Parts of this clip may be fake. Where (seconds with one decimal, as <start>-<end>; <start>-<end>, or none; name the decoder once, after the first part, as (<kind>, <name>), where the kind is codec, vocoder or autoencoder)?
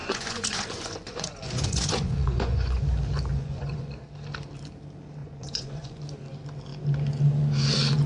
0.0-2.8 (vocoder, Vocos); 3.3-3.9; 5.2-6.0